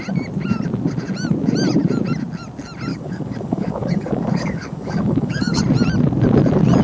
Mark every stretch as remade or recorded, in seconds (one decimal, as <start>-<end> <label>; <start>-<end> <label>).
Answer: 0.0-2.9 recorded; 2.9-5.6 remade; 5.6-6.8 recorded